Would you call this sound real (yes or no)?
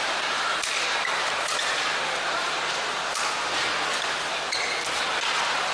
yes